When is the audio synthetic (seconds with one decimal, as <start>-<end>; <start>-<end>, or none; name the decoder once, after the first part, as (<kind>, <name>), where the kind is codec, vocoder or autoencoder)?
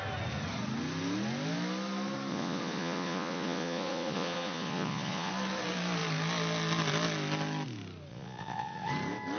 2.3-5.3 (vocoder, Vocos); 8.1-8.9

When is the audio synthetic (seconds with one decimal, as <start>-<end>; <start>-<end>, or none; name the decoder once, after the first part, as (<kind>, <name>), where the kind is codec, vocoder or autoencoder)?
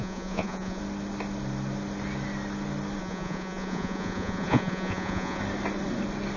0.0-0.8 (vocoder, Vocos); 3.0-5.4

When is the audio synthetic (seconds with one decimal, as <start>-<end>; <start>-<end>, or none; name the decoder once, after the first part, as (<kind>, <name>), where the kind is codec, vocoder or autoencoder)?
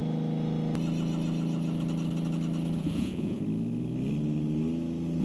2.8-3.4 (vocoder, Vocos)